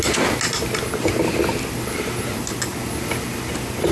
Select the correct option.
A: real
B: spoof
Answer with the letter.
A